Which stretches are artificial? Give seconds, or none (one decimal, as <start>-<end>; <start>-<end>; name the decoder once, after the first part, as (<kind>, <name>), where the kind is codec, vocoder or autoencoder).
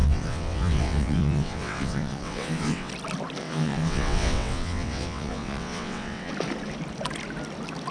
0.0-2.9 (vocoder, WaveNeXt); 3.4-6.3